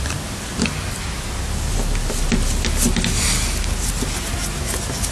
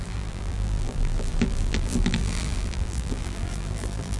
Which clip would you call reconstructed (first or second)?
second